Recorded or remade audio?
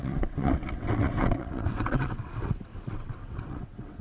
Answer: remade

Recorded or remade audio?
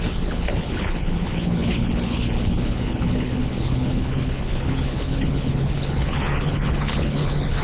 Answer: remade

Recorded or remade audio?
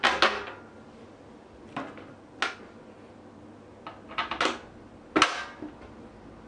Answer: recorded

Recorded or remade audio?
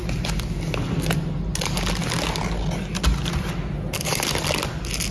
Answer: recorded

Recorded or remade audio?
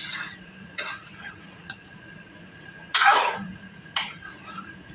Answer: remade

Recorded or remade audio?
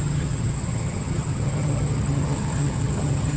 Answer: remade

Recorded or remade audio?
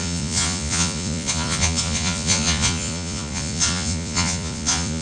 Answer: remade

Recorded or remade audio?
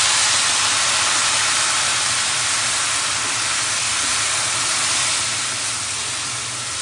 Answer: recorded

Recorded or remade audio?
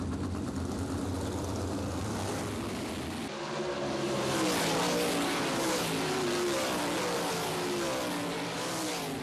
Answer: recorded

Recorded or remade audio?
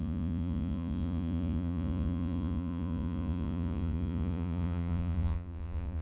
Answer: remade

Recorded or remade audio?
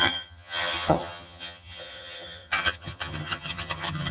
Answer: remade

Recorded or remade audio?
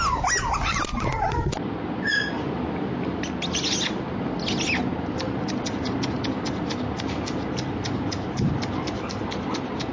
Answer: recorded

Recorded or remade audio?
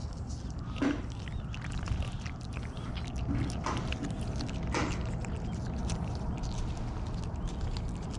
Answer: recorded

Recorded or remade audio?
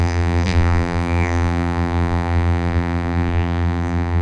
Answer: remade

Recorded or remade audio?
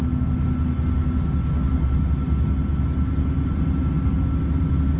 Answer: recorded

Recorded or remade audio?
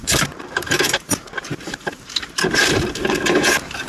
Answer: remade